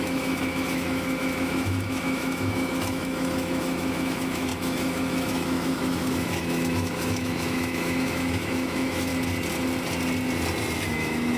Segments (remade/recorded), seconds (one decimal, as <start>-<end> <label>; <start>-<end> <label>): 0.0-9.1 remade; 9.1-10.9 recorded; 10.9-11.4 remade